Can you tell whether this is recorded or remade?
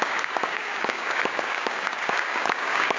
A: remade